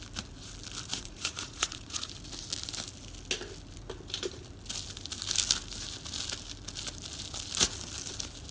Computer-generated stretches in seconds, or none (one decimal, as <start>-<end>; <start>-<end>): 0.9-2.1